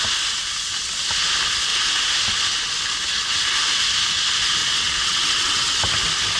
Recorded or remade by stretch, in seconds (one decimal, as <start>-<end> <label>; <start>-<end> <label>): 0.0-4.6 recorded; 4.6-5.8 remade; 5.8-6.4 recorded